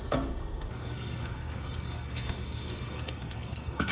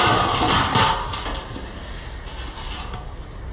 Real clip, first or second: second